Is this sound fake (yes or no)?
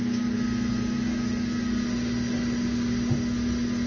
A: no